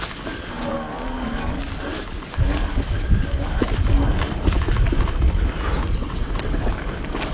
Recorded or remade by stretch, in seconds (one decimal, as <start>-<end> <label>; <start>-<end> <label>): 0.0-6.0 recorded; 6.0-6.7 remade; 6.7-7.3 recorded